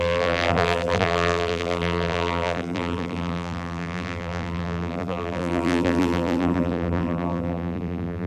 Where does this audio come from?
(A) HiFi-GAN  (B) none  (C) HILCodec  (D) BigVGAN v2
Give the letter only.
D